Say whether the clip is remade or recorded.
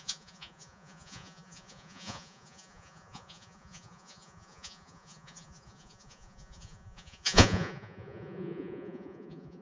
remade